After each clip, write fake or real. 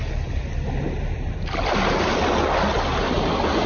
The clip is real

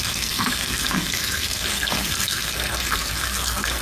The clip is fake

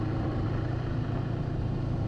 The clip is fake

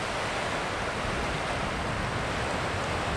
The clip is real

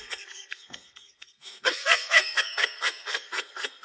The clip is fake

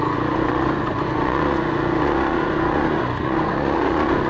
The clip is fake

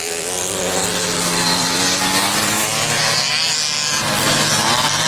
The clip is real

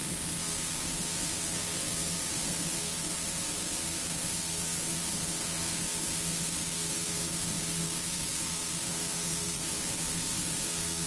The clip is fake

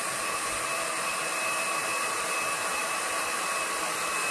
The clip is fake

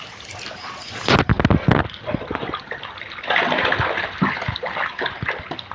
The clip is real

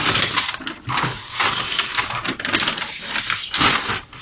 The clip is real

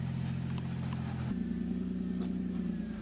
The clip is real